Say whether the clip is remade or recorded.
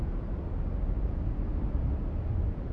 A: recorded